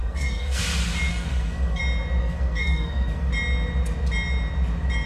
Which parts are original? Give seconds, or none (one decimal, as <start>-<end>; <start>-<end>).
0.6-1.1; 1.8-2.2; 3.3-5.1